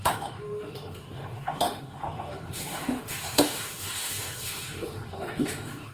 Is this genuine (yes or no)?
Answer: no